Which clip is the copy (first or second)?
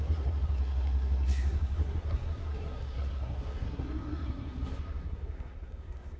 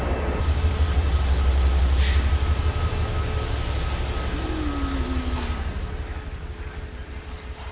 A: first